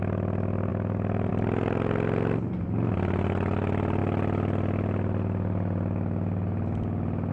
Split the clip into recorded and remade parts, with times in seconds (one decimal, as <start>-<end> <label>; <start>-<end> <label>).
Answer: 0.0-7.3 recorded